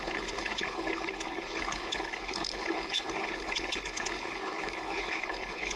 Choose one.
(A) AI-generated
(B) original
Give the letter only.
A